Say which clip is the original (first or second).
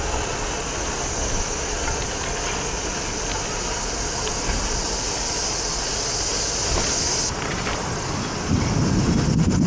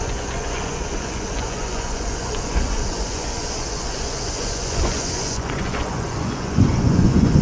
first